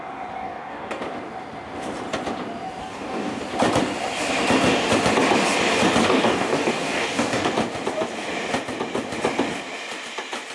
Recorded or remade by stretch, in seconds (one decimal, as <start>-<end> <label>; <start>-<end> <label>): 0.0-0.4 recorded; 0.4-1.0 remade; 1.0-2.8 recorded; 2.8-3.4 remade; 3.4-6.0 recorded; 6.0-7.5 remade; 7.5-10.5 recorded